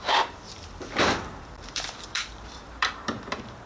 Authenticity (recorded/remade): remade